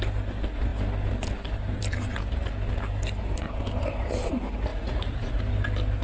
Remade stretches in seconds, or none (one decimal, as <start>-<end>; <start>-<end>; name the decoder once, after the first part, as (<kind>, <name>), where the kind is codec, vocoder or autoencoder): 4.7-5.4 (vocoder, Vocos)